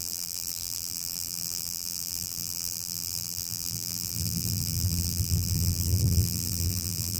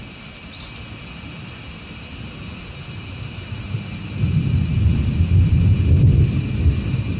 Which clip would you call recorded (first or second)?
second